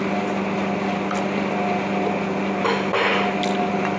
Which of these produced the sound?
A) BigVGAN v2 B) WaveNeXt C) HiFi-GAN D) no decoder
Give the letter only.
D